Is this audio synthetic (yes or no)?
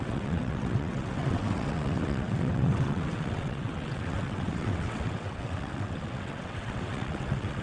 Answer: yes